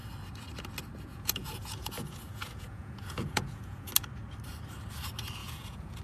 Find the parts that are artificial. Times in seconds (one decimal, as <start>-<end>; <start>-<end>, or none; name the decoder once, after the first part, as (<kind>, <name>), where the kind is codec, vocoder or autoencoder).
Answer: 1.1-3.9 (vocoder, Vocos); 5.4-6.0